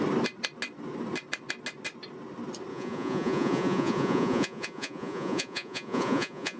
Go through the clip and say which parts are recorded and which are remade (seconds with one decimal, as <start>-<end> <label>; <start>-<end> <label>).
0.0-2.7 recorded; 2.7-6.6 remade